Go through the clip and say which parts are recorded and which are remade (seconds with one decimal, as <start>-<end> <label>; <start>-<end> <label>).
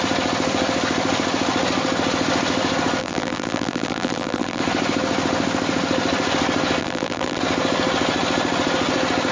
0.0-3.0 recorded; 3.0-4.6 remade; 4.6-6.8 recorded; 6.8-7.4 remade; 7.4-9.3 recorded